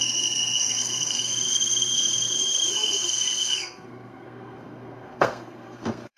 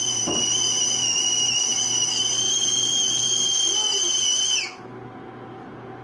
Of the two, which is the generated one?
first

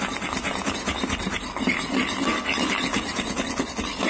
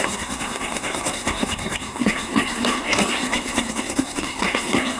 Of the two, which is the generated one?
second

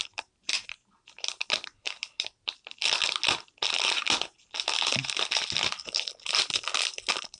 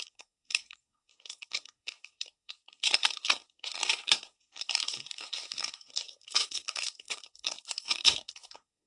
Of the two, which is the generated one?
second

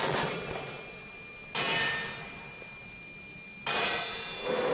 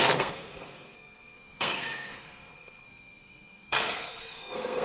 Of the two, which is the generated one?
second